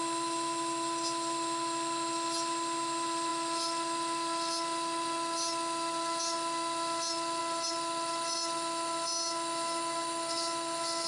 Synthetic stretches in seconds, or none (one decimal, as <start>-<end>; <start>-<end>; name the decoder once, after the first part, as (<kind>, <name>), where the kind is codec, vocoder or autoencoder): none